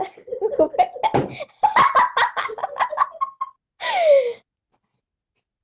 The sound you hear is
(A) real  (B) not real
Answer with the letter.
A